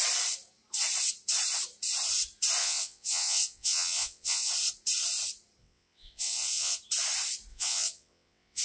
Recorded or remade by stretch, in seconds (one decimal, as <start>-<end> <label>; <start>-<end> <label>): 0.0-2.6 recorded; 2.6-4.5 remade; 4.5-5.6 recorded; 5.6-6.8 remade; 6.8-7.5 recorded; 7.5-8.6 remade